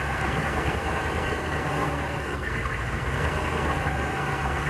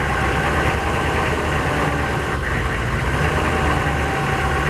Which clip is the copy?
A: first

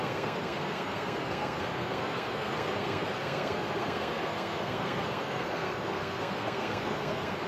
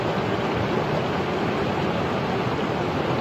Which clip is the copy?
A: first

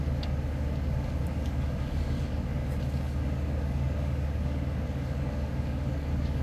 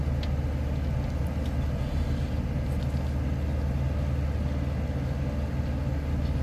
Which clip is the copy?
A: first